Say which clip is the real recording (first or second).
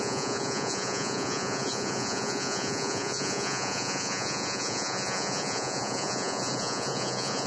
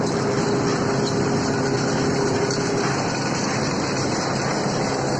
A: second